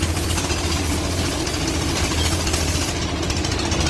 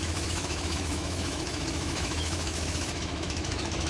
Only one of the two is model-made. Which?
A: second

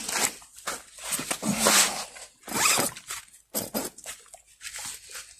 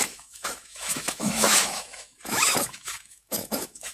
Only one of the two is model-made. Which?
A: second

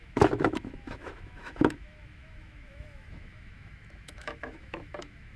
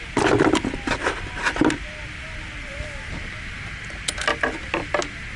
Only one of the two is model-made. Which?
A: first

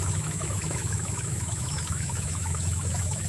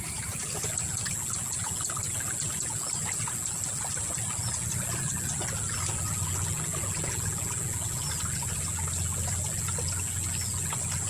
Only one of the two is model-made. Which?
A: first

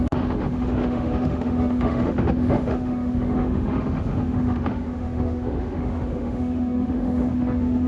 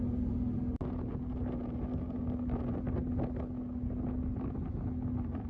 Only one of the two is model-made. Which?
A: first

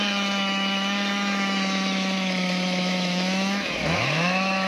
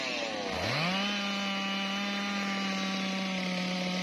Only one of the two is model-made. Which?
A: first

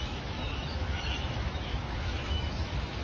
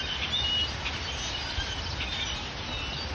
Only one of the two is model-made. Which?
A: first